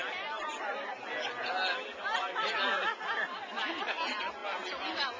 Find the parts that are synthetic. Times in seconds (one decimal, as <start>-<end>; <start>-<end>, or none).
none